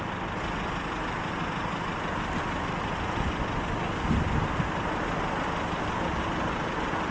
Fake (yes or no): no